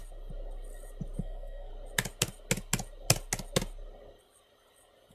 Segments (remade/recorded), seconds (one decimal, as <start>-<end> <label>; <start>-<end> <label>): 0.0-1.2 recorded; 1.2-1.7 remade; 1.7-5.1 recorded

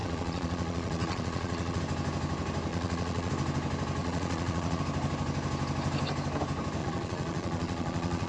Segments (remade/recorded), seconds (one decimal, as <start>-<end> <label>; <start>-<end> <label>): 0.0-1.8 remade; 1.8-2.7 recorded; 2.7-3.3 remade; 3.3-4.0 recorded; 4.0-4.8 remade; 4.8-6.8 recorded; 6.8-8.3 remade

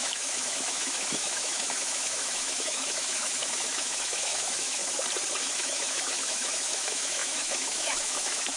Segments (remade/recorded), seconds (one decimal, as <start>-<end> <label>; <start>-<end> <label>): 0.0-4.8 remade; 4.8-5.4 recorded; 5.4-8.6 remade

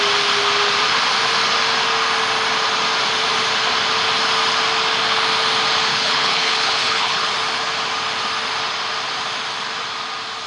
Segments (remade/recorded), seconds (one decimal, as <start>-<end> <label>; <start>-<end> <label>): 0.0-5.9 recorded; 5.9-7.3 remade; 7.3-10.5 recorded

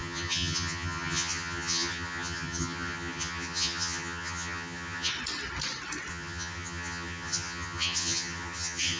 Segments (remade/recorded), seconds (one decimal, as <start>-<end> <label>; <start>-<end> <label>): 0.0-5.1 remade; 5.1-6.1 recorded; 6.1-9.0 remade

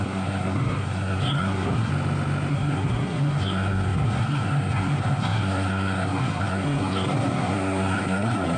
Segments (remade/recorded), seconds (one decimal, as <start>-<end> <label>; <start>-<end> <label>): 0.0-1.9 remade; 1.9-2.5 recorded; 2.5-8.6 remade